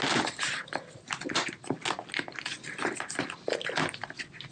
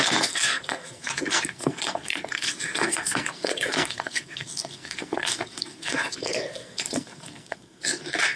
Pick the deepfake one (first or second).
second